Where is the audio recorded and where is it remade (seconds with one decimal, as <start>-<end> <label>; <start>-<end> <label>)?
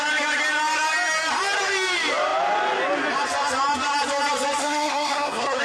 0.0-4.6 recorded; 4.6-5.6 remade